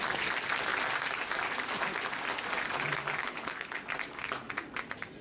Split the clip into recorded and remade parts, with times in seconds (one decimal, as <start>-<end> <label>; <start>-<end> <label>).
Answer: 0.0-3.2 recorded; 3.2-3.8 remade; 3.8-5.2 recorded

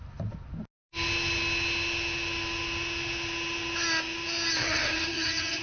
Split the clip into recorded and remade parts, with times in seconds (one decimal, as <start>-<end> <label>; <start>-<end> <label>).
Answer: 0.0-4.6 recorded; 4.6-5.6 remade

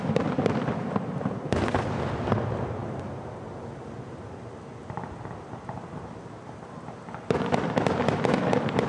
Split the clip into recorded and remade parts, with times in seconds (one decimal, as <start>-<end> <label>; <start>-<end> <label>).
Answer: 0.0-8.9 recorded

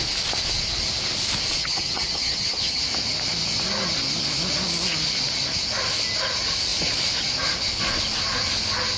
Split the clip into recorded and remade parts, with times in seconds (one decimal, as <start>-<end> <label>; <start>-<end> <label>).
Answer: 0.0-1.6 recorded; 1.6-2.8 remade; 2.8-9.0 recorded

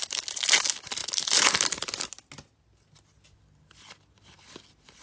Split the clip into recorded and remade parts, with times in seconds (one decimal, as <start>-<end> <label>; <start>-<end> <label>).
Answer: 0.0-5.0 recorded

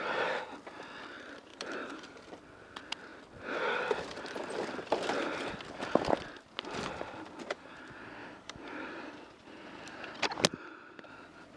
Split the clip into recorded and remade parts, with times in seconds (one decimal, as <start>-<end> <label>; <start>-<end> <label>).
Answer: 0.0-1.5 recorded; 1.5-2.4 remade; 2.4-8.2 recorded; 8.2-9.1 remade; 9.1-11.6 recorded